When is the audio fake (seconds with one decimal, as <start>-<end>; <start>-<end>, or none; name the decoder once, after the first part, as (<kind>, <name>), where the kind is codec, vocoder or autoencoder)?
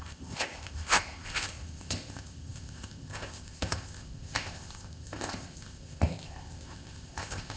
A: 0.0-7.6 (codec, ZipCodec)